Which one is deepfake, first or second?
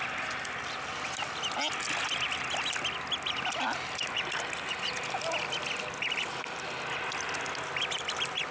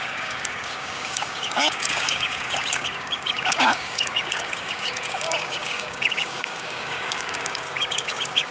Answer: second